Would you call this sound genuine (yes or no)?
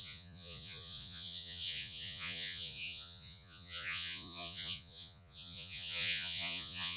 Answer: no